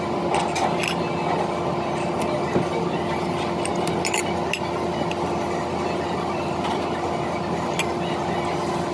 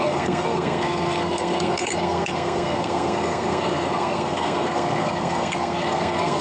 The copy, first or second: second